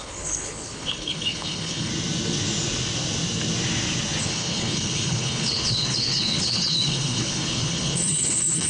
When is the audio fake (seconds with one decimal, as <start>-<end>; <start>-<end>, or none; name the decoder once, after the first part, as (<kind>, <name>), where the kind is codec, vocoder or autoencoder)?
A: 0.0-1.9 (codec, HILCodec); 4.2-8.7